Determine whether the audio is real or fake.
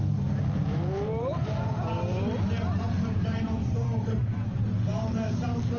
fake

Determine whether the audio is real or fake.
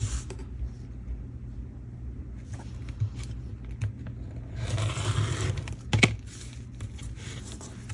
real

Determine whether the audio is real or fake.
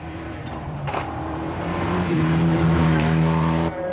fake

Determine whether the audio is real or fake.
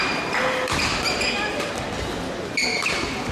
real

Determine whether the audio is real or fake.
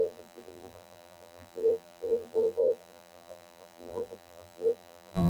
fake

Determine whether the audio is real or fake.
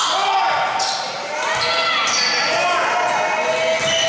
real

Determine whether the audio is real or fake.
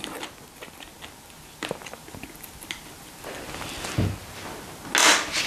real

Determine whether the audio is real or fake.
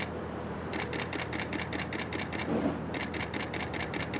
fake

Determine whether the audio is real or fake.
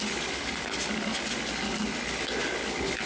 real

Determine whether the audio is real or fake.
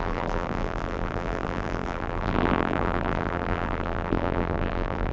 fake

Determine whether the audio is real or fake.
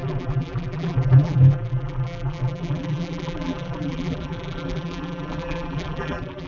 fake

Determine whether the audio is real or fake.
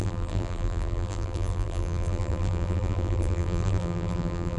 fake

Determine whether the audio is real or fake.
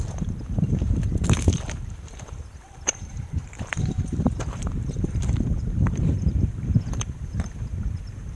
fake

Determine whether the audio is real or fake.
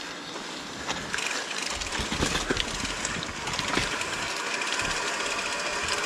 real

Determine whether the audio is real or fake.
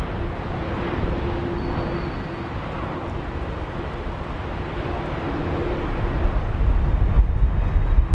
real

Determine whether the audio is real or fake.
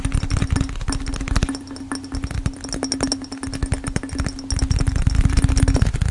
real